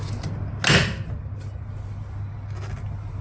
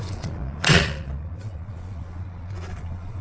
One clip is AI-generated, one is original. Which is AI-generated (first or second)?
second